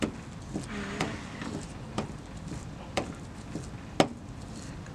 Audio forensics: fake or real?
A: real